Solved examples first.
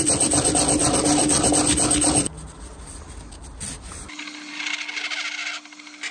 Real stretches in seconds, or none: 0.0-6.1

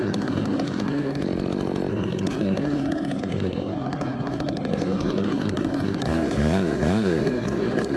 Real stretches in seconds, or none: 1.2-1.9

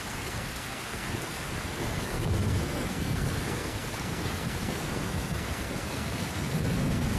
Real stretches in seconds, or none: none

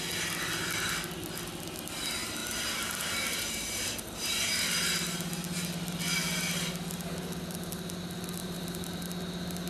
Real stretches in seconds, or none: 0.0-2.4; 4.6-8.4; 9.0-9.7

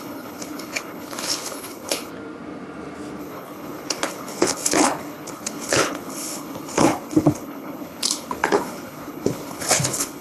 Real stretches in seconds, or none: 2.1-3.2

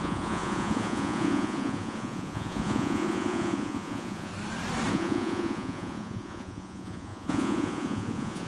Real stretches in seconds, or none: 4.3-4.9

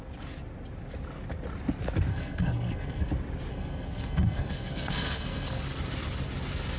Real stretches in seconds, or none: 0.0-2.1; 3.1-3.5; 5.6-6.8